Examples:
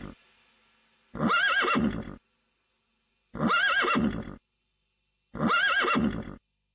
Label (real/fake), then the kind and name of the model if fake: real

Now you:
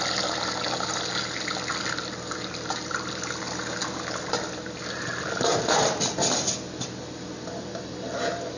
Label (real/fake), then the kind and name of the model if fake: real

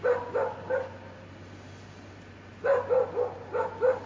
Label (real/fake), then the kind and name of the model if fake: real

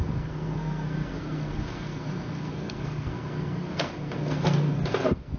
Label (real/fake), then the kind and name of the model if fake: fake, codec, SNAC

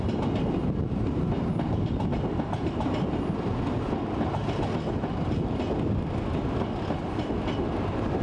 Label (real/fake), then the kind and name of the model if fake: real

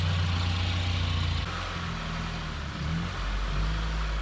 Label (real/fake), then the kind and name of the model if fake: real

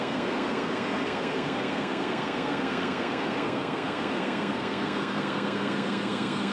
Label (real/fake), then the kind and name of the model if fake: fake, codec, SNAC